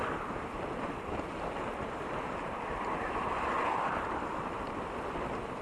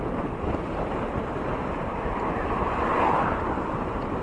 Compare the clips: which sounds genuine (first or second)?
second